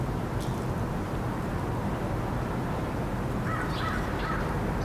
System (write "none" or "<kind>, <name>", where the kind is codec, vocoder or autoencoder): none